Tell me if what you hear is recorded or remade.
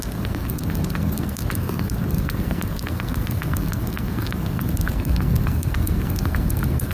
remade